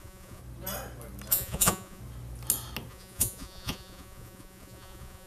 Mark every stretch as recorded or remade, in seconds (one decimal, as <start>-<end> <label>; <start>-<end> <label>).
0.0-0.4 remade; 0.4-1.3 recorded; 1.3-2.0 remade; 2.0-2.9 recorded; 2.9-5.3 remade